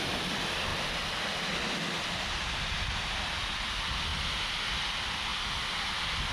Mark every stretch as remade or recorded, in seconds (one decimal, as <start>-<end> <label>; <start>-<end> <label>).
0.0-6.3 recorded